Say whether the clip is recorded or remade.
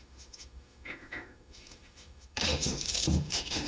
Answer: remade